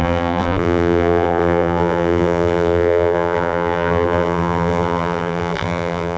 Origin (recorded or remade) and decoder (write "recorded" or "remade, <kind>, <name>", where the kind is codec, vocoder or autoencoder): remade, vocoder, BigVGAN v2